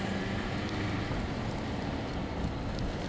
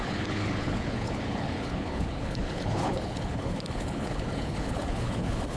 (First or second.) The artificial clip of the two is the second